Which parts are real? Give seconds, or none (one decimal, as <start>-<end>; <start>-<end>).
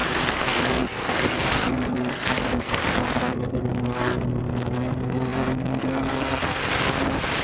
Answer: 6.6-7.4